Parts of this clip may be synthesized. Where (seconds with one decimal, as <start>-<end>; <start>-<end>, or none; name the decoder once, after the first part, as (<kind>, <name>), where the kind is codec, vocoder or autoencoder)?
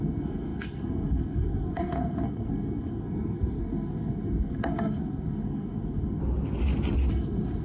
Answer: 0.0-6.2 (codec, SNAC); 7.1-7.6